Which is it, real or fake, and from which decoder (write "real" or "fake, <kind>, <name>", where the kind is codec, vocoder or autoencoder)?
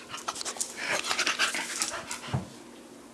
real